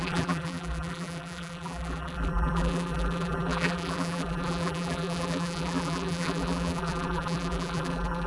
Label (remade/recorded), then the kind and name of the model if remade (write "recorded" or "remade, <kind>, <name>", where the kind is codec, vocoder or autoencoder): remade, vocoder, BigVGAN v2